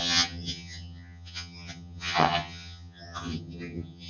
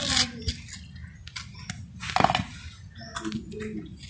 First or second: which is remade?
first